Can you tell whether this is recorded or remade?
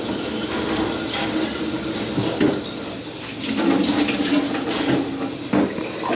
recorded